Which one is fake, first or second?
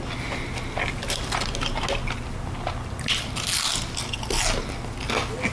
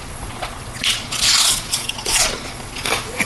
second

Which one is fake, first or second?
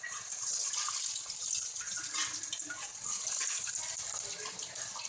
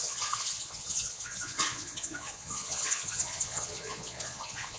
second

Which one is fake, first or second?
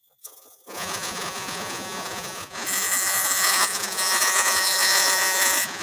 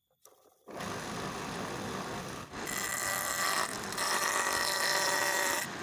first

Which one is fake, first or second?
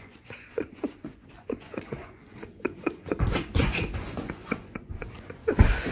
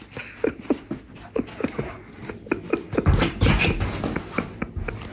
first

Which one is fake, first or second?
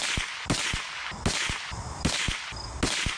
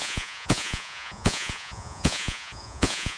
second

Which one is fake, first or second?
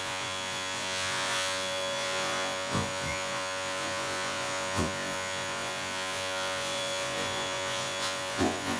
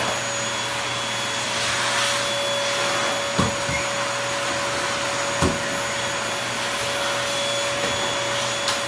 first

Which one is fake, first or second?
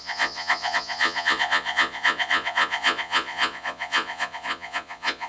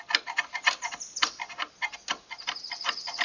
first